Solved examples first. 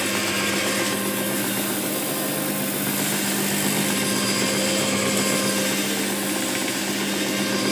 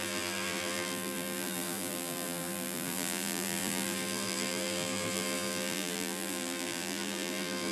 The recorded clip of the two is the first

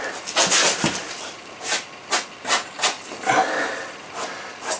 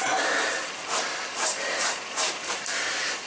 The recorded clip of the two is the first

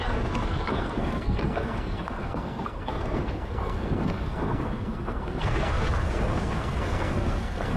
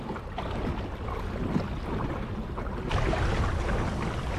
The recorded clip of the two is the second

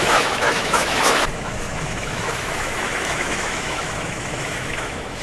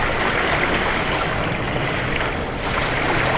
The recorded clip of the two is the second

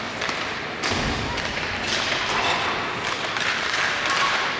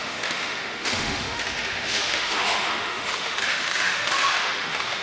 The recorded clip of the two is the first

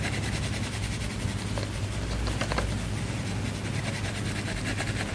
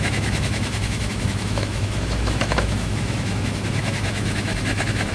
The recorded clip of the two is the first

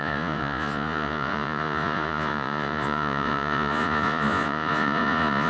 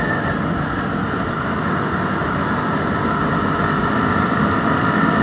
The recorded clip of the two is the second